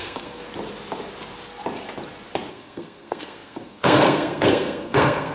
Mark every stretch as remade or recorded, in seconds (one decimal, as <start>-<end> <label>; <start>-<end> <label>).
0.0-0.4 remade; 0.4-2.5 recorded; 2.5-5.3 remade